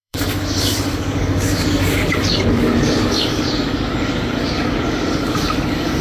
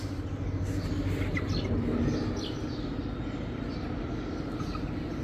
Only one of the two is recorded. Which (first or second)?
second